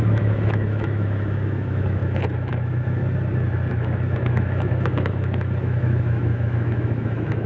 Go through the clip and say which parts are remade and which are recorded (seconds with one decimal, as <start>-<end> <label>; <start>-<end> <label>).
0.0-3.0 remade; 3.0-3.7 recorded; 3.7-7.5 remade